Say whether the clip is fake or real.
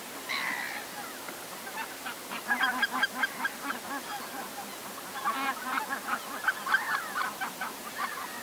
real